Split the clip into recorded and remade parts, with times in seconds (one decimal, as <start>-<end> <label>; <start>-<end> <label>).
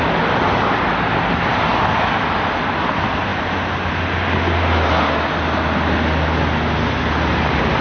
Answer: 0.0-7.8 recorded